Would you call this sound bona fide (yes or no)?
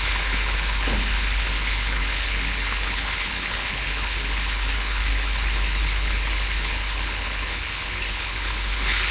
no